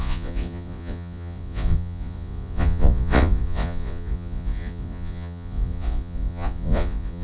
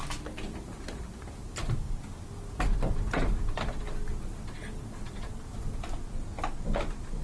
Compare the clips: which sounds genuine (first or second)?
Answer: second